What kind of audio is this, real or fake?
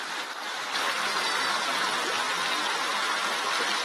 real